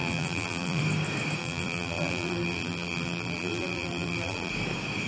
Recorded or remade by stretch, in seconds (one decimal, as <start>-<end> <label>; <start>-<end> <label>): 0.0-0.8 remade; 0.8-1.4 recorded; 1.4-4.5 remade; 4.5-5.1 recorded